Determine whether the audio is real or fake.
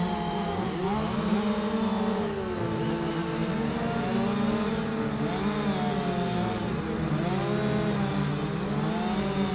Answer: real